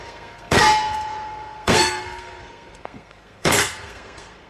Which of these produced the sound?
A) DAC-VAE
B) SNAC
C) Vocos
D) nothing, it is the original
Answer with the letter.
B